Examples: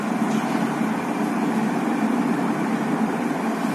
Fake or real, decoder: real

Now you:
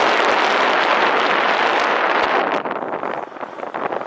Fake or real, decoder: real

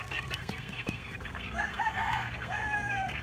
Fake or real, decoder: fake, codec, SNAC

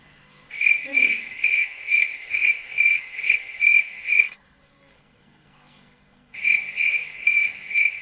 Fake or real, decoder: fake, codec, SNAC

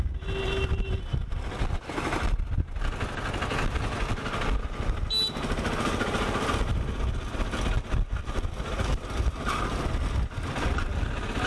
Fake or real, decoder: real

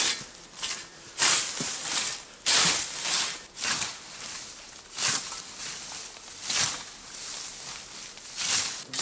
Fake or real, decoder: real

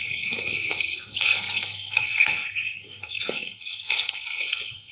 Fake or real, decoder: fake, codec, SNAC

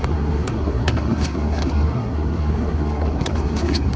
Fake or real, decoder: fake, codec, SNAC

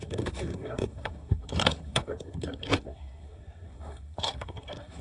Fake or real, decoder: fake, codec, SNAC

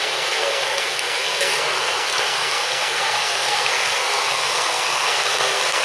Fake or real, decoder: fake, codec, SNAC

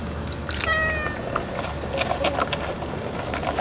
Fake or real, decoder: real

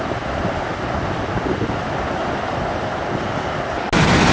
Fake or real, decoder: real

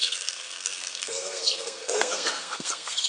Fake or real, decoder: fake, codec, SNAC